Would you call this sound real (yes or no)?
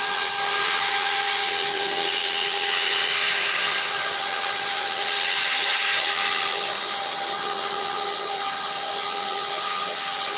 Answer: no